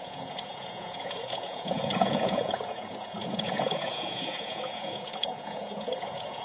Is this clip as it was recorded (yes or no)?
no